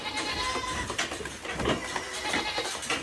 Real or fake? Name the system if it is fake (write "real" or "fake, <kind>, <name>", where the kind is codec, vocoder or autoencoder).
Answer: real